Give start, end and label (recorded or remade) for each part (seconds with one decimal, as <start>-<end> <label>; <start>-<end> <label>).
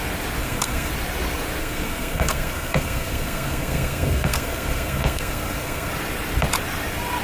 0.0-0.4 recorded; 0.4-0.9 remade; 0.9-1.6 recorded; 1.6-5.9 remade; 5.9-7.2 recorded